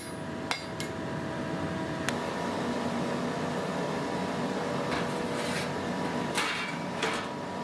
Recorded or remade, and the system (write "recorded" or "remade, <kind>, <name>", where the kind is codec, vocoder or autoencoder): recorded